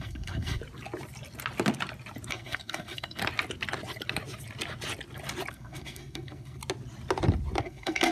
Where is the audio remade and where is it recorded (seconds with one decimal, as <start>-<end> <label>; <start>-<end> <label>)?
0.0-0.6 remade; 0.6-2.3 recorded; 2.3-3.2 remade; 3.2-5.5 recorded; 5.5-6.6 remade; 6.6-7.6 recorded; 7.6-8.1 remade